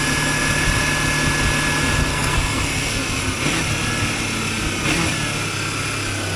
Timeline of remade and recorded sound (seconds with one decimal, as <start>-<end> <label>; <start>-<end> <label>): 0.0-2.1 recorded; 2.1-3.2 remade; 3.2-6.4 recorded